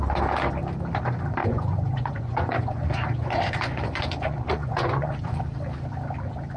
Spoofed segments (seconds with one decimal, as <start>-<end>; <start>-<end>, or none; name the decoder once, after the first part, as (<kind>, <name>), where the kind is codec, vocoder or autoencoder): 1.4-5.4 (vocoder, Vocos)